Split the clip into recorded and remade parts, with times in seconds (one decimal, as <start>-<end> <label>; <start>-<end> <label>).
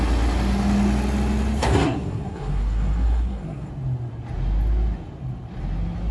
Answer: 0.0-1.6 recorded; 1.6-3.7 remade; 3.7-6.1 recorded